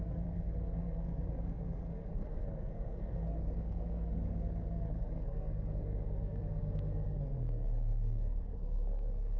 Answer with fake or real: fake